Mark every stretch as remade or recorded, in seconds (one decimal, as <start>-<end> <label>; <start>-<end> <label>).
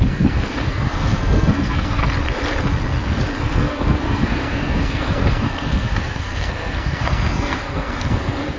0.0-2.0 remade; 2.0-3.4 recorded; 3.4-8.6 remade